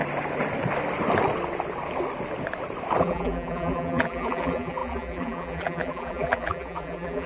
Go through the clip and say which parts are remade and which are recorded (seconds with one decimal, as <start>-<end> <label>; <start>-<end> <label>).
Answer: 0.0-3.0 recorded; 3.0-7.3 remade